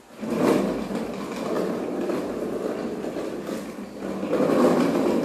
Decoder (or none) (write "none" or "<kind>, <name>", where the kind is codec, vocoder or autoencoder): none